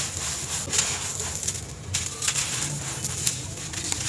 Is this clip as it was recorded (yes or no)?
yes